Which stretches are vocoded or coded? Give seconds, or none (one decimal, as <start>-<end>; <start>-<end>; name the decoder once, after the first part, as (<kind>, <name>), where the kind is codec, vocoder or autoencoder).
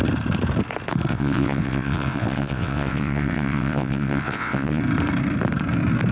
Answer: 1.1-4.8 (vocoder, WaveNeXt)